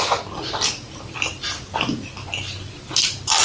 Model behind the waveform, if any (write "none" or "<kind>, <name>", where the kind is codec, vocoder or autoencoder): none